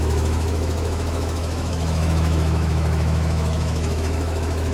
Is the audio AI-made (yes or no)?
yes